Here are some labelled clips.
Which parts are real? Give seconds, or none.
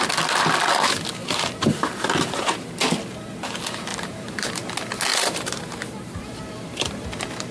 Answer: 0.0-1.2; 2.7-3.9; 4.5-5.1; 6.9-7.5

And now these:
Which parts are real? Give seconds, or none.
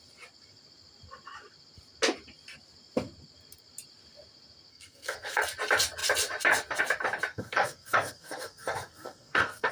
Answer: 0.0-4.7; 5.4-7.3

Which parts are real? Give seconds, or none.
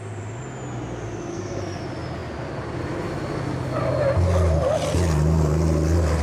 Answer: 0.0-1.3; 1.8-6.2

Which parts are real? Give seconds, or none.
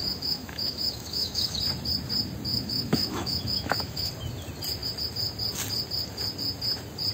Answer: 1.6-2.5; 4.1-7.1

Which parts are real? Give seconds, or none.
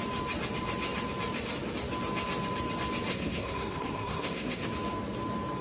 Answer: 0.0-3.1; 4.7-5.6